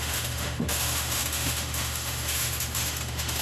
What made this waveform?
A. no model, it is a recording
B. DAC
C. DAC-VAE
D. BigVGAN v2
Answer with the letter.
C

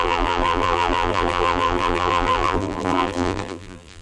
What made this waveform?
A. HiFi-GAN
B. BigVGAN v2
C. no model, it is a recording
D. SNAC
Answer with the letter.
B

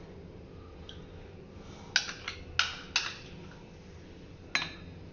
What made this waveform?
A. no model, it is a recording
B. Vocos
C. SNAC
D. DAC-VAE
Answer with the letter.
A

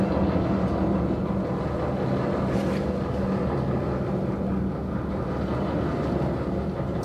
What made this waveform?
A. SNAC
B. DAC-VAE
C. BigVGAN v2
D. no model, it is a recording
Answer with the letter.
D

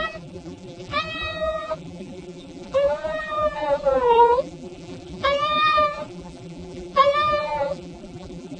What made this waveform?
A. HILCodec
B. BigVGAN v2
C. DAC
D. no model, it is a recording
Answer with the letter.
B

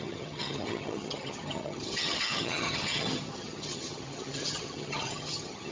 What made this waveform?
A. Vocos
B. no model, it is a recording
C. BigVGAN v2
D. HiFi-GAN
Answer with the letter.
D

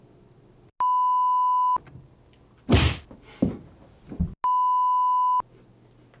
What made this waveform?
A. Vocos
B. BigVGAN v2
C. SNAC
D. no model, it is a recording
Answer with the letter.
D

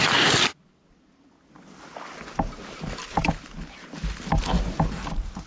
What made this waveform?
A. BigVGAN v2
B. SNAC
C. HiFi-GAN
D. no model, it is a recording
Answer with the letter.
D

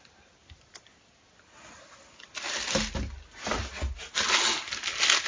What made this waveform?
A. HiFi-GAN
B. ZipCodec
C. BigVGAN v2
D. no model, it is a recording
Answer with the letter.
D